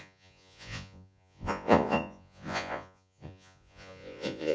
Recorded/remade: remade